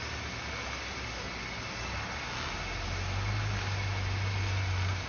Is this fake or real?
real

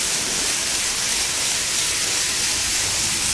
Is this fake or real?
real